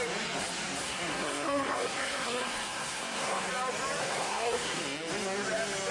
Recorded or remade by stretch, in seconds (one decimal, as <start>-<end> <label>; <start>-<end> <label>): 0.0-0.8 recorded; 0.8-3.5 remade; 3.5-4.0 recorded; 4.0-4.8 remade; 4.8-5.9 recorded